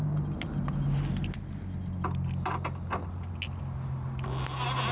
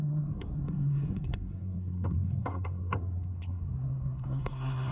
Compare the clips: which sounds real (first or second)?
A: first